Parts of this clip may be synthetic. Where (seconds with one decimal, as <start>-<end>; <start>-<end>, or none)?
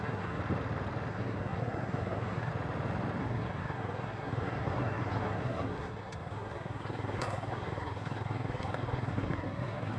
0.0-0.4; 1.1-2.5; 3.2-10.0